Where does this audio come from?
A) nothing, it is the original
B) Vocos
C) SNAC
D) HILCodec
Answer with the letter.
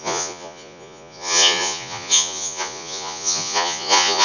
B